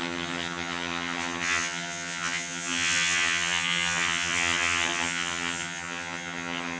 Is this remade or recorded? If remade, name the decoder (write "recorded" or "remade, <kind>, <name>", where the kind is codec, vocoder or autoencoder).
remade, vocoder, HiFi-GAN